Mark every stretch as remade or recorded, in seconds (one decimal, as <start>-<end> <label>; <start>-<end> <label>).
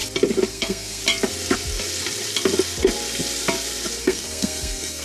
0.0-0.5 recorded; 0.5-1.0 remade; 1.0-4.0 recorded; 4.0-5.0 remade